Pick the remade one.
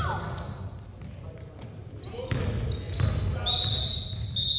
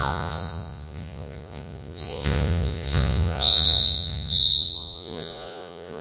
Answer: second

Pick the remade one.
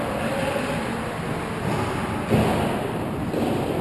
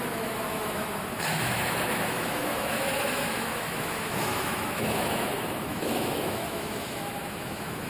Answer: second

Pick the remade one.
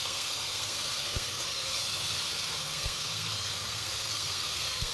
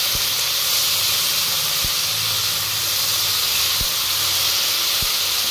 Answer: first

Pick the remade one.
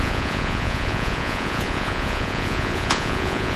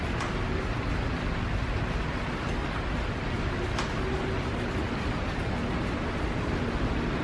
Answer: first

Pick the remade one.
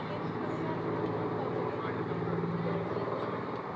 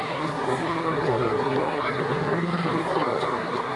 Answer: second